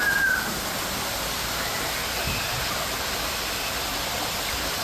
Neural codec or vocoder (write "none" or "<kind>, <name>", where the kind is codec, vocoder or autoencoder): none